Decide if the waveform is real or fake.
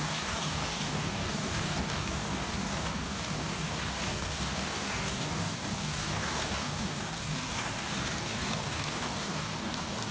fake